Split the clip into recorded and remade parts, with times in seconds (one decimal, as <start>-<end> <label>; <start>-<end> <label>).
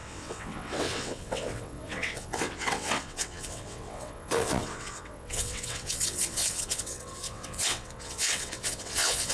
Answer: 0.0-9.3 remade